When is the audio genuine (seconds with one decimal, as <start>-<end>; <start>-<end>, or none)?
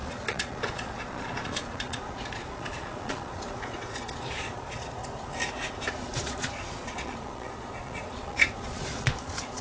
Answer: 5.0-5.9